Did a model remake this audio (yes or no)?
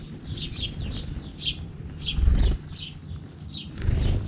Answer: no